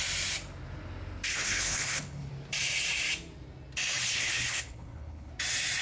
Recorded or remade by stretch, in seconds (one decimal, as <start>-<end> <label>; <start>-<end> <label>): 0.0-1.3 recorded; 1.3-2.3 remade; 2.3-4.0 recorded; 4.0-5.3 remade; 5.3-5.8 recorded